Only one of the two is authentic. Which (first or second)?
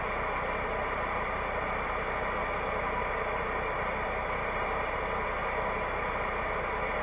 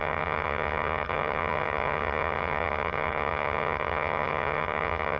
first